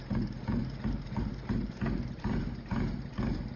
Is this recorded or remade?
remade